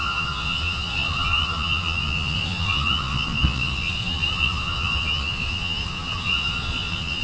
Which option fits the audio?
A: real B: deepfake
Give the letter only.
B